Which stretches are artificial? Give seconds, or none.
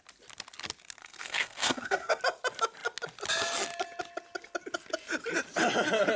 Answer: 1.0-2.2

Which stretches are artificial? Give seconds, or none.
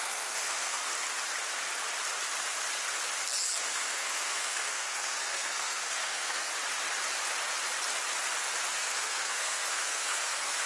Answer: 0.0-0.8; 3.6-6.5; 8.7-10.7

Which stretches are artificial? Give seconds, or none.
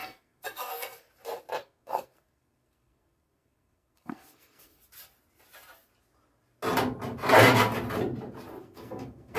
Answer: 0.0-1.1; 1.6-4.8; 8.6-9.4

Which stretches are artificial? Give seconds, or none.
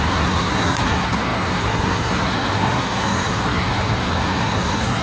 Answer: 0.0-5.0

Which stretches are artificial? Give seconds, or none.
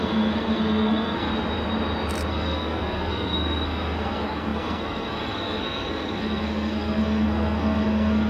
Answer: 0.0-1.3; 2.3-8.3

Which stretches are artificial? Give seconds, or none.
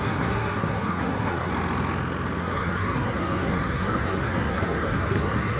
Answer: 0.0-1.5; 2.4-5.6